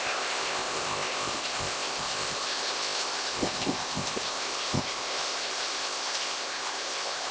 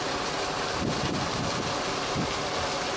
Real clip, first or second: second